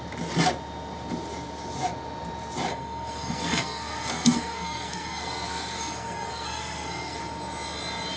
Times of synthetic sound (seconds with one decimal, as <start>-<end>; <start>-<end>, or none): 2.7-7.2